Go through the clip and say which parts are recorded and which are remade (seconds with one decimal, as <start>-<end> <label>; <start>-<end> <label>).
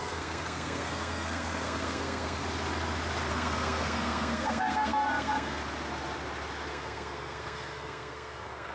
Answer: 0.0-2.4 remade; 2.4-3.3 recorded; 3.3-5.6 remade; 5.6-6.7 recorded; 6.7-8.7 remade